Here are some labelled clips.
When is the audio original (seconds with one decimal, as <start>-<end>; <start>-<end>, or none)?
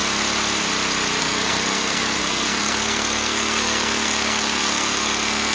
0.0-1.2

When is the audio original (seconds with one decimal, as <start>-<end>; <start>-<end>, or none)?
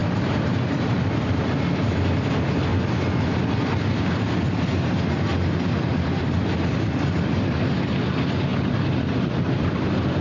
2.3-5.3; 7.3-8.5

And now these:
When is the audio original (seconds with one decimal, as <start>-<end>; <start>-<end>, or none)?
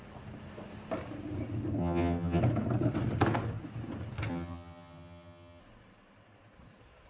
0.0-1.8; 2.4-4.3; 5.6-7.1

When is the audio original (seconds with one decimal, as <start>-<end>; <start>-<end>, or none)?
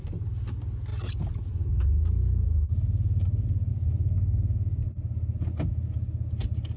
0.0-3.7; 4.8-6.8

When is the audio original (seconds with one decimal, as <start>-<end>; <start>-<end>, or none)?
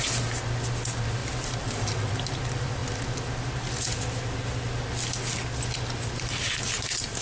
0.0-1.2; 2.1-7.2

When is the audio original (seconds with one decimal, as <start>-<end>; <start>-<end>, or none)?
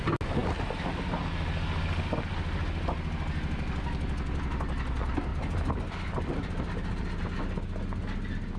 0.0-8.6